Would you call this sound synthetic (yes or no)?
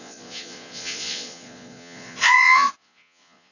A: yes